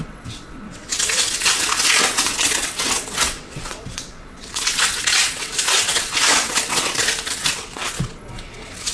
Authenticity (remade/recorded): remade